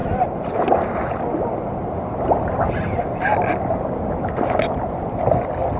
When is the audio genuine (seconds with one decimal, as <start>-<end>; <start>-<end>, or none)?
0.0-5.8